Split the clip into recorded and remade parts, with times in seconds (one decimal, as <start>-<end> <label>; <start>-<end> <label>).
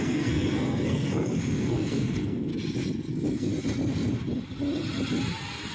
0.0-2.5 remade; 2.5-3.1 recorded; 3.1-3.5 remade; 3.5-5.7 recorded